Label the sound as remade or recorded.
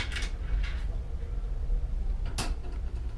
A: recorded